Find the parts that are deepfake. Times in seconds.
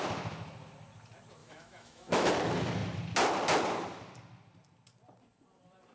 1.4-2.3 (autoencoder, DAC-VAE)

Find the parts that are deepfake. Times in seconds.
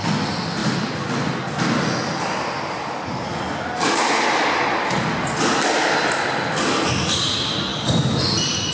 none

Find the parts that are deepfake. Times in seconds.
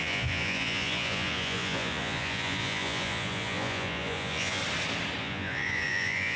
0.0-4.6 (vocoder, Vocos); 5.2-6.4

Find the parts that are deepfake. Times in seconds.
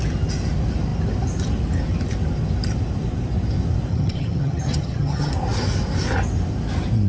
3.9-5.3 (vocoder, HiFi-GAN)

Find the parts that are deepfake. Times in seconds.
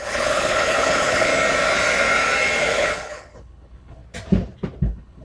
0.0-1.3 (codec, HILCodec); 2.6-4.0; 4.8-5.2